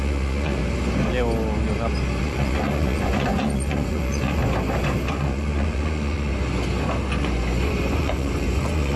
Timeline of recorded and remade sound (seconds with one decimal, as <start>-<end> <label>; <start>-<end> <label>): 0.0-0.6 remade; 0.6-2.2 recorded; 2.2-4.4 remade; 4.4-5.1 recorded; 5.1-6.3 remade; 6.3-7.2 recorded; 7.2-9.0 remade